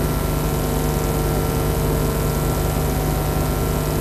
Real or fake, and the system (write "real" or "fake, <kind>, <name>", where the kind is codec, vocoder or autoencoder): real